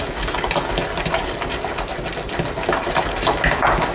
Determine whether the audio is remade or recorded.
recorded